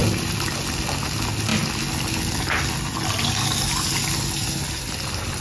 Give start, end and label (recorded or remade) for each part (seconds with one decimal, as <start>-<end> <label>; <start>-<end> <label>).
0.0-0.5 remade; 0.5-5.4 recorded